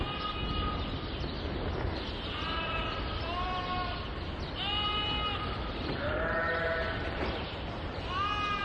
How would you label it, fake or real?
real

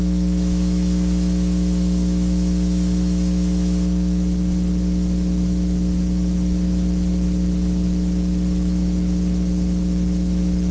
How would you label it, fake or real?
fake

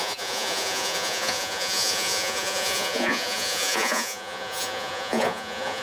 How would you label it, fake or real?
fake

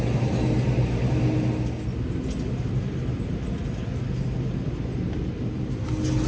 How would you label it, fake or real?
real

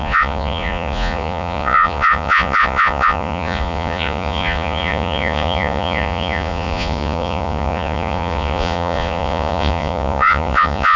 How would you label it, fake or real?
fake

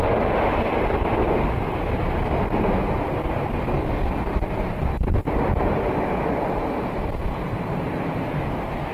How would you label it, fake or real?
real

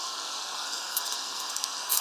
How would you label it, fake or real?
fake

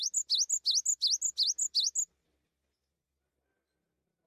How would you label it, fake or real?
real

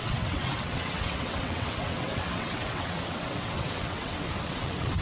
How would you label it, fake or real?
fake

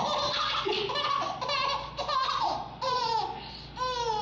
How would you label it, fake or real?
real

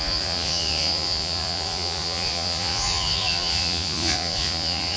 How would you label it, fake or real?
fake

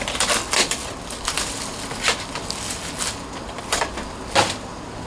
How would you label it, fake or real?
real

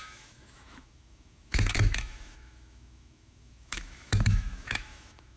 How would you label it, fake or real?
fake